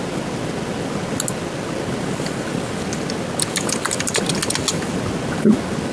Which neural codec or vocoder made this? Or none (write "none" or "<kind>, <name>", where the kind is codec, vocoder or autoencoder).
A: none